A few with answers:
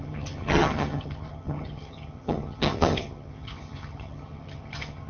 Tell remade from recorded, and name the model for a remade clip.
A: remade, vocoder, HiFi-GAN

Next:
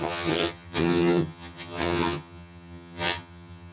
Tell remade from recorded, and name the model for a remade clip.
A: remade, vocoder, HiFi-GAN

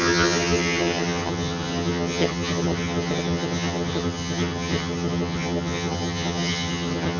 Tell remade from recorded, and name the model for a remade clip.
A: remade, vocoder, HiFi-GAN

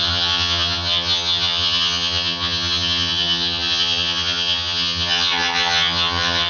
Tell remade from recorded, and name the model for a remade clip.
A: remade, vocoder, HiFi-GAN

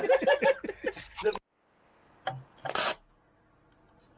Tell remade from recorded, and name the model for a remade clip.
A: recorded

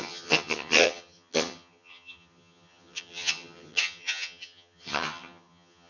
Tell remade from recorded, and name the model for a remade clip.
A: remade, vocoder, HiFi-GAN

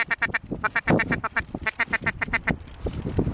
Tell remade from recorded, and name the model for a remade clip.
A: recorded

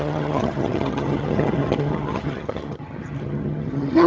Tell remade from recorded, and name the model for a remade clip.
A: remade, vocoder, HiFi-GAN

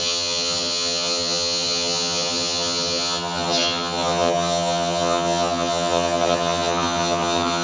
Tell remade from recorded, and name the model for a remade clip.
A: remade, vocoder, HiFi-GAN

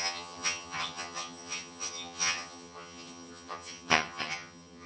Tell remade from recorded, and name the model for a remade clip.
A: remade, vocoder, HiFi-GAN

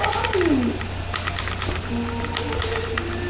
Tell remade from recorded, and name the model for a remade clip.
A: recorded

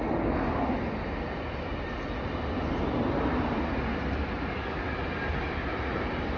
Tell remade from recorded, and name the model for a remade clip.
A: recorded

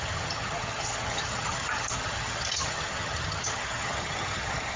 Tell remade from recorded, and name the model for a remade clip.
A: remade, vocoder, HiFi-GAN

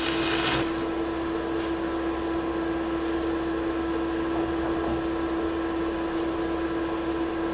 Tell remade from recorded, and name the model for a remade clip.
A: recorded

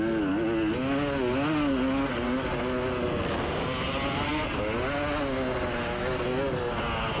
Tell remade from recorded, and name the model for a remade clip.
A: recorded